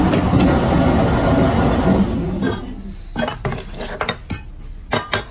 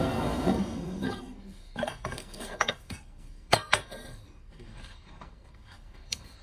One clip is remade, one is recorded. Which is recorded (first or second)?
first